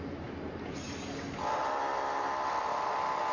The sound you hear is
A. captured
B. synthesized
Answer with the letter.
A